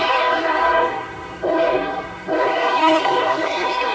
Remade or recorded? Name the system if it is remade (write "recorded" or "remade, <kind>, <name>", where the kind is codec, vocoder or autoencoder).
remade, codec, SNAC